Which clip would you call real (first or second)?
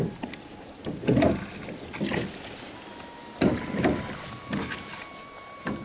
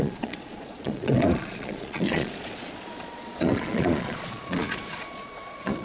first